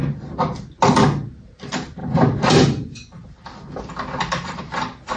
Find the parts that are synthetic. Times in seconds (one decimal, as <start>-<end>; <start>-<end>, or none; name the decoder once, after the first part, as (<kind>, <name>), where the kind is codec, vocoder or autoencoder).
none